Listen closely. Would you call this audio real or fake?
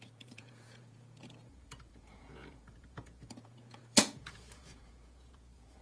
fake